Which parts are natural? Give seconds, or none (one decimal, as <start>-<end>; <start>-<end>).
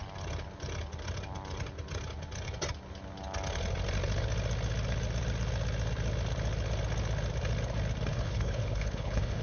0.0-8.1